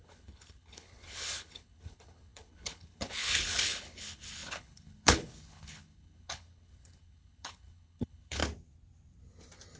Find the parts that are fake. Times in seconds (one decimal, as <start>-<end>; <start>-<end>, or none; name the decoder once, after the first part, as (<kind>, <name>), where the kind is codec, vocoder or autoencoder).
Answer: 0.0-8.4 (codec, HILCodec)